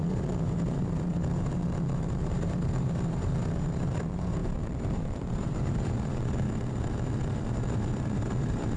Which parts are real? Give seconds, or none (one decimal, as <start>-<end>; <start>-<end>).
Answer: none

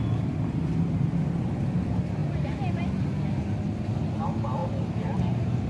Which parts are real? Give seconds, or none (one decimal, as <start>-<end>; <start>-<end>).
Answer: 0.0-5.7

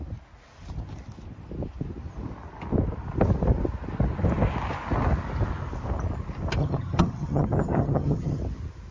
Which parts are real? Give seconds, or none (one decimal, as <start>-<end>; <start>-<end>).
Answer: 0.0-6.6; 8.4-8.9

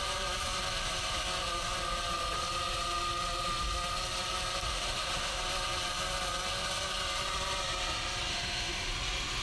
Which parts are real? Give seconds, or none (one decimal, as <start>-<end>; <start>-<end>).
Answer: 0.0-4.7; 5.4-8.3; 8.9-9.4

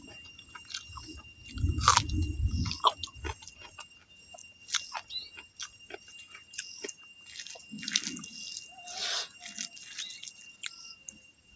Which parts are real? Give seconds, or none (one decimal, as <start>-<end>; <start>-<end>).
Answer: 0.0-11.6

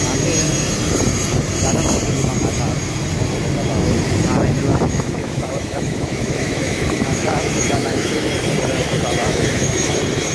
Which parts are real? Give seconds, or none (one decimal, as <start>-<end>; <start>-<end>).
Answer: 0.0-4.7; 8.3-9.2; 9.9-10.3